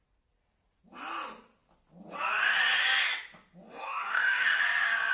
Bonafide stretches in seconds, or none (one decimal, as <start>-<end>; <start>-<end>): 0.0-3.8; 4.6-5.1